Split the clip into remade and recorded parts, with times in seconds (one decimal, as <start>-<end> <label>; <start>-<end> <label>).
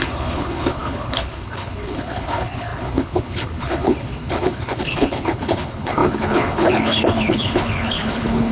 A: 0.0-8.5 remade